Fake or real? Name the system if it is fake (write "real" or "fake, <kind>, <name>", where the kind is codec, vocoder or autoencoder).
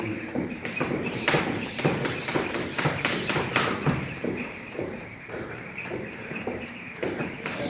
fake, vocoder, BigVGAN v2